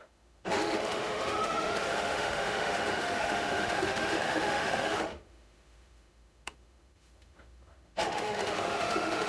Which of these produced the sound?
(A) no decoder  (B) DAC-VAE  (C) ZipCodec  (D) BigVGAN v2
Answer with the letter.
B